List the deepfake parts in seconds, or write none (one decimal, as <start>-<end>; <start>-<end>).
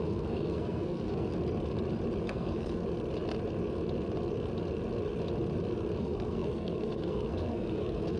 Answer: 0.0-1.3; 2.2-2.8; 6.0-8.2